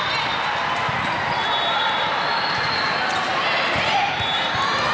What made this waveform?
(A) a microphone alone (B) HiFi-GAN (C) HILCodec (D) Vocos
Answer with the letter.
A